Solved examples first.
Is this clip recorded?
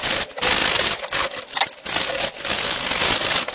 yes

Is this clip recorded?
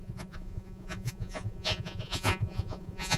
no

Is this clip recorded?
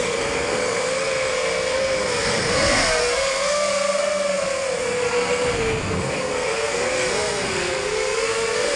no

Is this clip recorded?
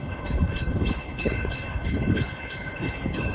no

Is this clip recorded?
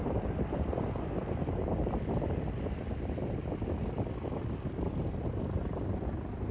yes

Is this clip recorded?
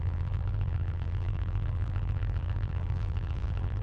no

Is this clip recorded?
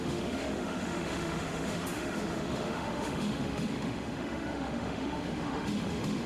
no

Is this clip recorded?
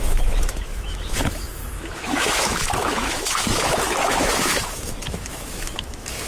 no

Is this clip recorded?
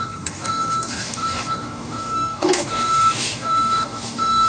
no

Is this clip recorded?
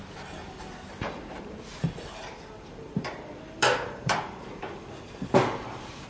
no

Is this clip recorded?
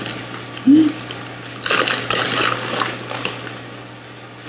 yes